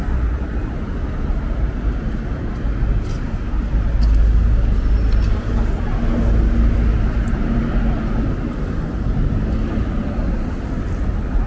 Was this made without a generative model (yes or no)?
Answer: yes